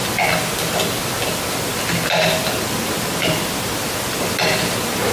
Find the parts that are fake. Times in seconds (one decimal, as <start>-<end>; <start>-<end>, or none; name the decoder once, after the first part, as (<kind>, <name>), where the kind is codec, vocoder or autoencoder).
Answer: none